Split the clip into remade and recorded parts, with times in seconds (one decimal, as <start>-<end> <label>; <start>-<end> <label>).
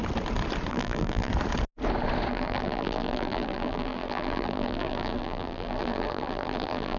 0.0-0.7 recorded; 0.7-1.3 remade; 1.3-2.3 recorded; 2.3-7.0 remade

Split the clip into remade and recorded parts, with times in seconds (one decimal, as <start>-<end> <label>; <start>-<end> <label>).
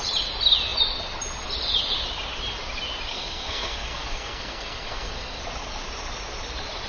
0.0-3.1 recorded; 3.1-5.4 remade; 5.4-6.9 recorded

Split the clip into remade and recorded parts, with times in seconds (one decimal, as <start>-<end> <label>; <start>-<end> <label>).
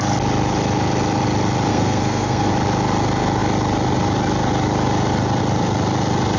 0.0-1.7 recorded; 1.7-2.5 remade; 2.5-6.4 recorded